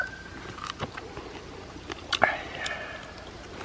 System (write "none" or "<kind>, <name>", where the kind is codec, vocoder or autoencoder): none